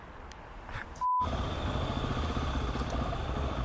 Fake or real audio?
real